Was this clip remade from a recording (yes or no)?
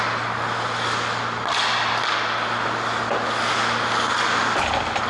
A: no